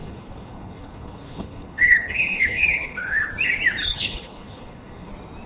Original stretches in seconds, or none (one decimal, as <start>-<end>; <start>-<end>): 3.3-3.8; 5.1-5.5